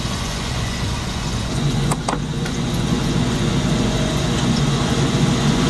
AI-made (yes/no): yes